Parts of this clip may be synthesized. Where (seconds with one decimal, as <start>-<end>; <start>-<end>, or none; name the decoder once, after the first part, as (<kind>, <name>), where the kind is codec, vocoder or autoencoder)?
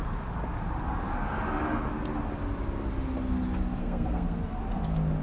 3.8-4.4 (codec, SNAC)